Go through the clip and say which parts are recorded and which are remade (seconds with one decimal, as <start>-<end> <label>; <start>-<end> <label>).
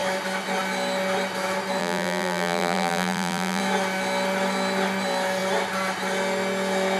0.0-1.8 recorded; 1.8-3.6 remade; 3.6-7.0 recorded